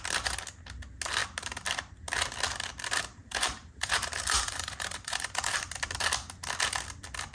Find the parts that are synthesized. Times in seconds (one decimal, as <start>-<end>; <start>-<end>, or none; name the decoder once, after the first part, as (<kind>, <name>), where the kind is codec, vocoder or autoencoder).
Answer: 3.2-5.6 (vocoder, BigVGAN v2)